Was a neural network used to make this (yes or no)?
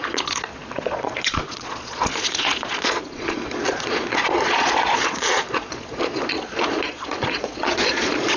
yes